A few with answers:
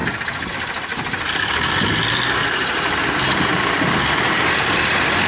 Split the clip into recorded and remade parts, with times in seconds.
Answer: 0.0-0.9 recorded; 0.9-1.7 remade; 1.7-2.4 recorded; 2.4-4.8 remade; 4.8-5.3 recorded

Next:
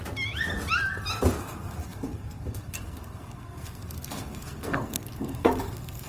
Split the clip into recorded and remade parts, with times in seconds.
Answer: 0.0-1.4 recorded; 1.4-6.1 remade